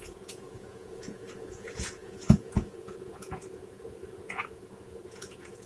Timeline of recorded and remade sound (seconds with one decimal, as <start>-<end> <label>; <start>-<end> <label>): 0.0-5.7 remade